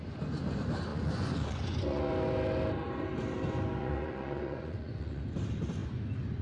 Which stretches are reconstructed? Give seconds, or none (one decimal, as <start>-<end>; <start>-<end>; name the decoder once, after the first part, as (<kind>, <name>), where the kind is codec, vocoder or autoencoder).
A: 0.9-2.1 (vocoder, Vocos); 3.8-5.2